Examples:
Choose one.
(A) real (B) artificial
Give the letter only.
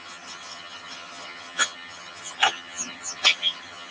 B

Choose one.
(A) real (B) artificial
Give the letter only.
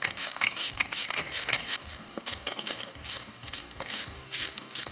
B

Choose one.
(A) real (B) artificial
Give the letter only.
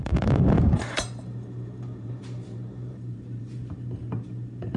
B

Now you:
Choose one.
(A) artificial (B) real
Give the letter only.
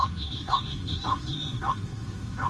A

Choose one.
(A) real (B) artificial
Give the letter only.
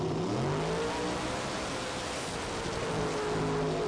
A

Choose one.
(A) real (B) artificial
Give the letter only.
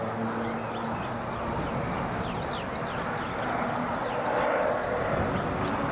A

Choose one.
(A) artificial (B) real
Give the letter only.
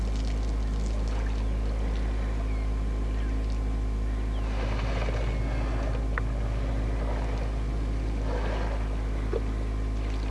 B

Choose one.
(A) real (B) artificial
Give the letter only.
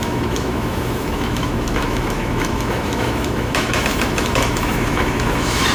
B